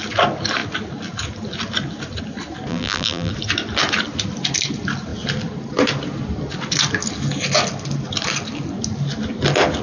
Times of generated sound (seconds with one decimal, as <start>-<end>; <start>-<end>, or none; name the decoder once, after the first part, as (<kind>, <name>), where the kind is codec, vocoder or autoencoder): 2.7-3.3 (vocoder, BigVGAN v2)